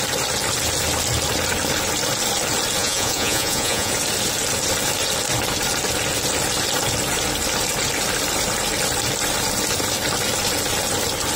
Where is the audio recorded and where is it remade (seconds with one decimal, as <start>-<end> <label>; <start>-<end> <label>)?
0.0-2.8 recorded; 2.8-3.9 remade; 3.9-11.4 recorded